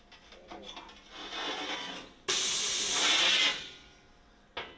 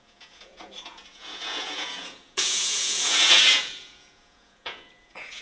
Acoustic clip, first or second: first